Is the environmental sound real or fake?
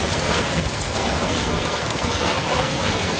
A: fake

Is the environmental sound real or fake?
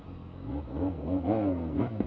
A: fake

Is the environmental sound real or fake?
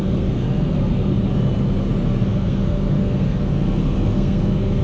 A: fake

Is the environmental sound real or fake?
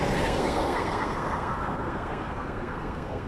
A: fake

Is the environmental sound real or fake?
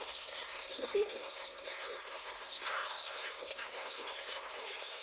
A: fake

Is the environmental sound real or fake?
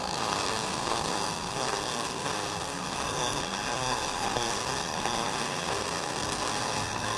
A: fake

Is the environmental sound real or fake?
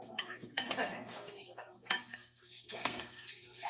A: fake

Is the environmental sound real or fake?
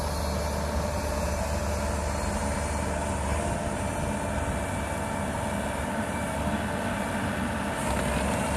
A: real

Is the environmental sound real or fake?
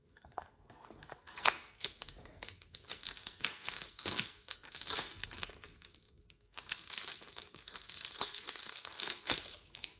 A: fake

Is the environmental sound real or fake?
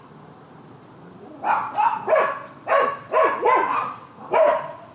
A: real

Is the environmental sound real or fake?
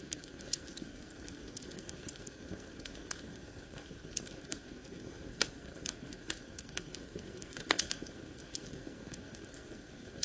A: fake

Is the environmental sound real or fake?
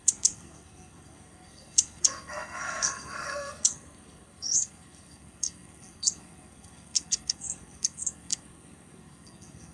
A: fake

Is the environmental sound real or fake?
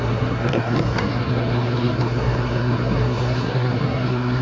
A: fake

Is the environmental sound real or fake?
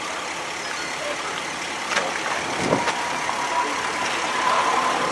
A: real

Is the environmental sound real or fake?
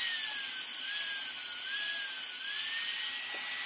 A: real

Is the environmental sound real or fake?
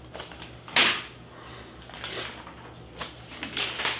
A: real